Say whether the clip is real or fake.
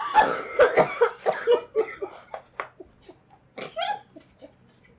real